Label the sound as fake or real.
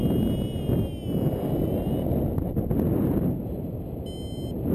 real